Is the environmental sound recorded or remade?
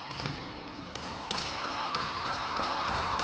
remade